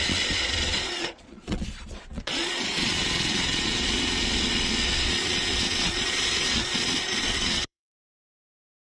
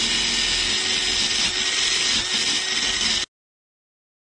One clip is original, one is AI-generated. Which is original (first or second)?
second